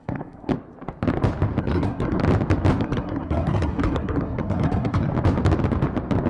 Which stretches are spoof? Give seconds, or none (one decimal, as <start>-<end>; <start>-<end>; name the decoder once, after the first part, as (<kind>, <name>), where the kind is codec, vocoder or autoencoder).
0.0-0.5 (codec, SNAC); 1.6-2.2; 2.8-5.1